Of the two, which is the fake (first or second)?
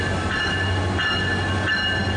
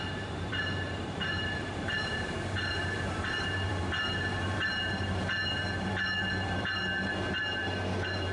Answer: second